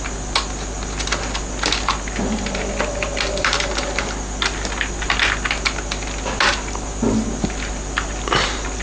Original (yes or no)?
yes